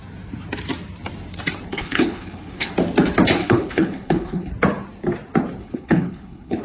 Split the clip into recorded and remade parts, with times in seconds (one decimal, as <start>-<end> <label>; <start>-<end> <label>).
0.0-1.7 recorded; 1.7-2.7 remade; 2.7-3.4 recorded; 3.4-4.5 remade; 4.5-5.6 recorded; 5.6-6.6 remade